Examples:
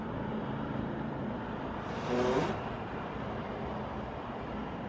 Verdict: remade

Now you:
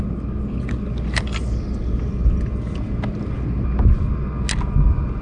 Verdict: recorded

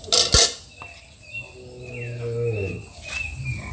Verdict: recorded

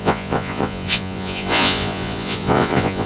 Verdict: remade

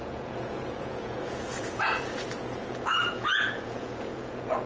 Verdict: remade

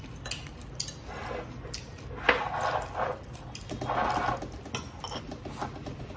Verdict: recorded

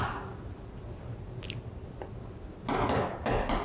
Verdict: recorded